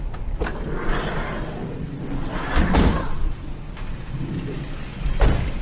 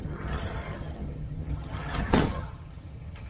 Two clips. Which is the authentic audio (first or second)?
first